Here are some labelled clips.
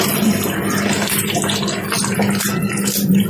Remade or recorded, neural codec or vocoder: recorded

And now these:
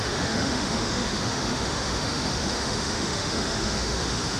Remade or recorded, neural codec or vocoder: remade, autoencoder, DAC-VAE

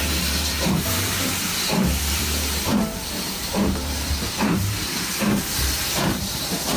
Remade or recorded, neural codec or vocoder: remade, vocoder, BigVGAN v2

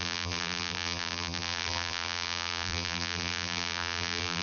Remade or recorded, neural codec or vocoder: remade, vocoder, BigVGAN v2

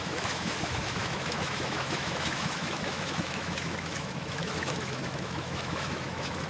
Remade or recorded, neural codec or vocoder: remade, autoencoder, DAC-VAE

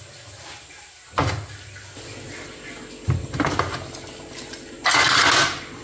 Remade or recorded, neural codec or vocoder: recorded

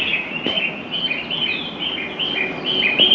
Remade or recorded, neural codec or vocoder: recorded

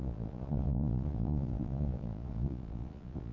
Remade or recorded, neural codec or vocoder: remade, vocoder, Vocos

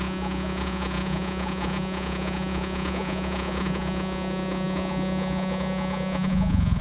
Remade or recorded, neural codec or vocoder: remade, vocoder, Vocos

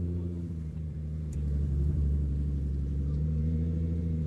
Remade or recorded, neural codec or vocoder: remade, vocoder, BigVGAN v2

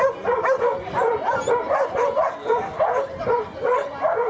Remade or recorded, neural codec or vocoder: recorded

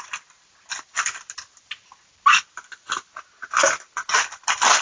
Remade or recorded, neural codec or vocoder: recorded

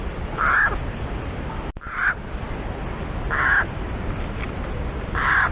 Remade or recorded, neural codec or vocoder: recorded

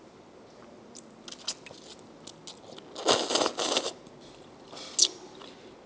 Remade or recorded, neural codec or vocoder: recorded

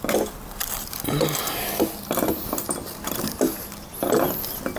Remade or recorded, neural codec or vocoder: recorded